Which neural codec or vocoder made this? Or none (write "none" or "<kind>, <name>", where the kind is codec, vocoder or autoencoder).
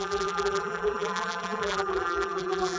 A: vocoder, BigVGAN v2